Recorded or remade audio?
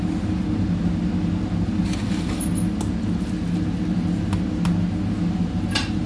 recorded